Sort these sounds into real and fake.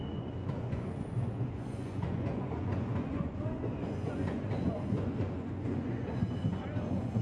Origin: fake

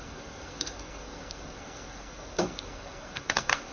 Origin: fake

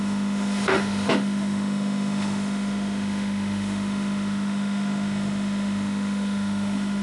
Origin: fake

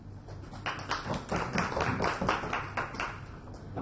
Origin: real